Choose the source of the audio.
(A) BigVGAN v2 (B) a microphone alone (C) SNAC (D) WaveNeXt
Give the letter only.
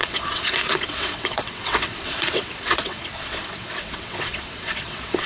D